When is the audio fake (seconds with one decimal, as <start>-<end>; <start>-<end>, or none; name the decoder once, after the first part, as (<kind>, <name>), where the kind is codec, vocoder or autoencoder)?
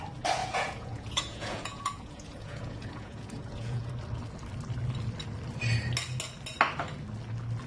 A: 0.4-3.9 (vocoder, Vocos)